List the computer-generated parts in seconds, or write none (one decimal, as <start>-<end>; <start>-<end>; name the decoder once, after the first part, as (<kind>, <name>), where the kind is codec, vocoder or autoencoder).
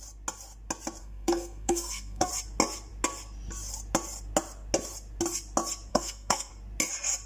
1.0-2.3 (codec, SNAC); 5.9-6.5